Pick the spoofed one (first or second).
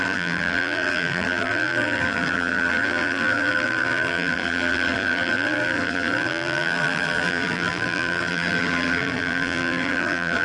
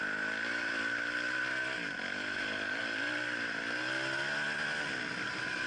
first